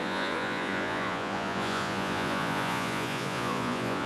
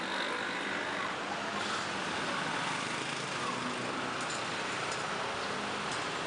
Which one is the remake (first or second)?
first